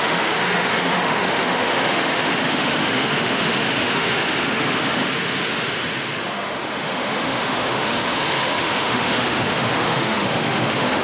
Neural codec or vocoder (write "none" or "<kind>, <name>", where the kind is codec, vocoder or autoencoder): autoencoder, DAC-VAE